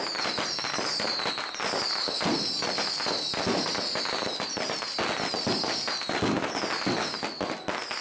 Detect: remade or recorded recorded